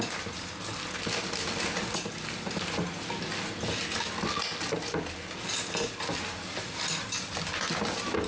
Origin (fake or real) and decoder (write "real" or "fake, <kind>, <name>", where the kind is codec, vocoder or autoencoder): real